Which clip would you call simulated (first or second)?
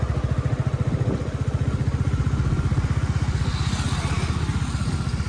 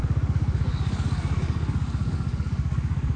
second